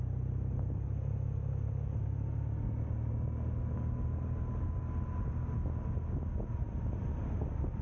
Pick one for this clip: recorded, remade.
recorded